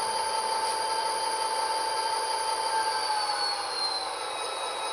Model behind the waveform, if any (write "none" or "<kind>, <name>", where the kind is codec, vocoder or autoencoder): none